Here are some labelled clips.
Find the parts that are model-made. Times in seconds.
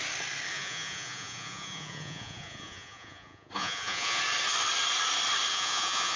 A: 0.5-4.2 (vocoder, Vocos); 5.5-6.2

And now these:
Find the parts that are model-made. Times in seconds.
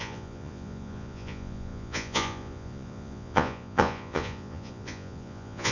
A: 0.0-5.7 (vocoder, Vocos)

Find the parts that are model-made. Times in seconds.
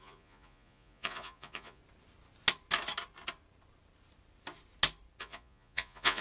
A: 0.0-1.8 (vocoder, Vocos); 5.2-6.2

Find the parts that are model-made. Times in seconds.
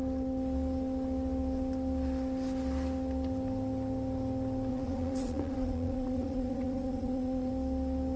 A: 4.7-7.5 (vocoder, Vocos)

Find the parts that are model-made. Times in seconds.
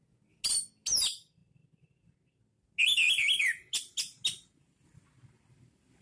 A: none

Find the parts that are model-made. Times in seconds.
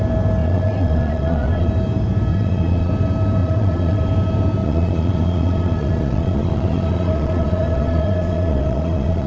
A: 0.4-1.7 (vocoder, Vocos); 2.3-2.9; 3.4-4.0; 4.6-9.3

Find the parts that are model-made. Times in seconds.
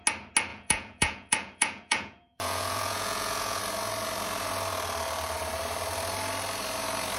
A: 0.5-3.6 (vocoder, Vocos)